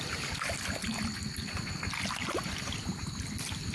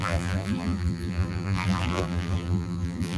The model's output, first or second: second